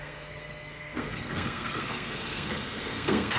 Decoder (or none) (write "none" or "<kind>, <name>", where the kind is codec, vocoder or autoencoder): codec, SNAC